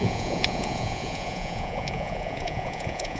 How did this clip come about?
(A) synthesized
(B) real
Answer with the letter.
A